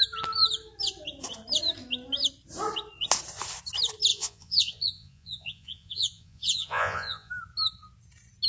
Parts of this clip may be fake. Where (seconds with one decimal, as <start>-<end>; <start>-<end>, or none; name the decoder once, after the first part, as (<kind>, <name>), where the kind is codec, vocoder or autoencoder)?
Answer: 4.1-7.3 (vocoder, Vocos)